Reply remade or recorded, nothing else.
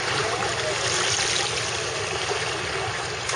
recorded